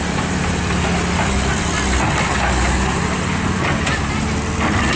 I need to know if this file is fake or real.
real